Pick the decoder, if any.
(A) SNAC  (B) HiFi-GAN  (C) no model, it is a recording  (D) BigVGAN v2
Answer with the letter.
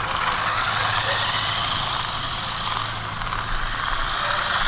C